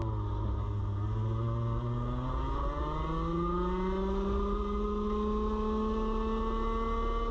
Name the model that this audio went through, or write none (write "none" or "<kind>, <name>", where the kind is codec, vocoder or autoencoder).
none